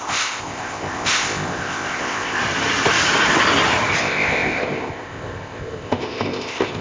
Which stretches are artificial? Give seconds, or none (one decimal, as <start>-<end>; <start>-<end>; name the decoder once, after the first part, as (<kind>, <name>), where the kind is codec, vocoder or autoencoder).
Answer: 0.0-2.4 (codec, ZipCodec); 4.0-6.8